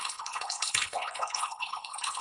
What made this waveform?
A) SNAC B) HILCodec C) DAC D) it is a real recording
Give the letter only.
B